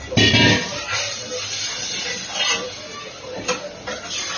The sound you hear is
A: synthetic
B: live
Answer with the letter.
B